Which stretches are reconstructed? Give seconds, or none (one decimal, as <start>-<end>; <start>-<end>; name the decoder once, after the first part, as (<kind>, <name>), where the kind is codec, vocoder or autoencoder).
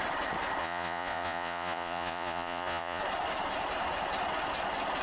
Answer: 0.6-3.0 (vocoder, Vocos)